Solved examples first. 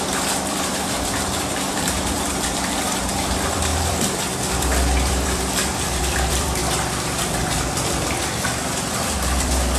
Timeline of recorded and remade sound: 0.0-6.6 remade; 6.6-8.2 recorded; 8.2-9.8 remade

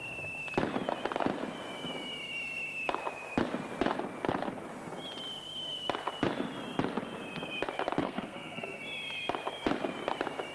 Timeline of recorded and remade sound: 0.0-8.0 recorded; 8.0-8.8 remade; 8.8-10.5 recorded